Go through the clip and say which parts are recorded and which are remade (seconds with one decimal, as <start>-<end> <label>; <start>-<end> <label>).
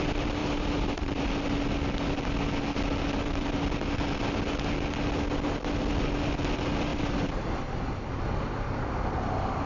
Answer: 0.0-0.4 recorded; 0.4-1.3 remade; 1.3-6.9 recorded; 6.9-8.1 remade; 8.1-9.7 recorded